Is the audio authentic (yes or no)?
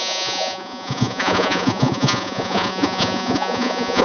no